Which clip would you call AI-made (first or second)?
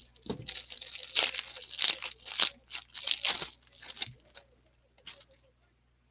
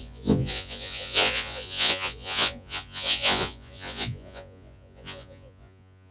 second